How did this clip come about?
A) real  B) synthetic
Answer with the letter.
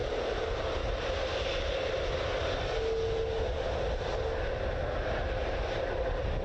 A